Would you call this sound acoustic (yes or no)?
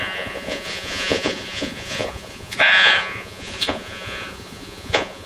no